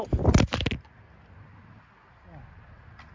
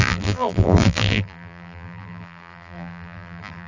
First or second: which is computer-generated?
second